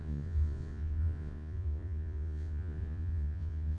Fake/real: fake